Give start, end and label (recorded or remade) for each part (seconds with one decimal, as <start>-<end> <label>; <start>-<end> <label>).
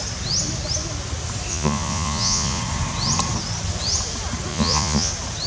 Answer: 0.0-1.5 recorded; 1.5-2.6 remade; 2.6-4.5 recorded; 4.5-5.1 remade; 5.1-5.5 recorded